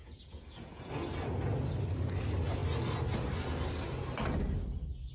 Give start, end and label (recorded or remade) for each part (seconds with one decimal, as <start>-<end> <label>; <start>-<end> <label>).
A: 0.0-0.8 remade; 0.8-5.1 recorded